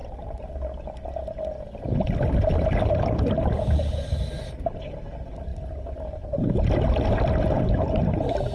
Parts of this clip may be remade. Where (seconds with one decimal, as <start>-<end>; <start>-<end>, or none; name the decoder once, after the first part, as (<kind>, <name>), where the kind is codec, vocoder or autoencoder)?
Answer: none